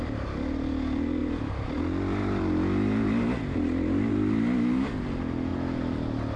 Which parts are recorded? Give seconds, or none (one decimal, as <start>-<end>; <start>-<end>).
0.0-1.2; 1.8-6.4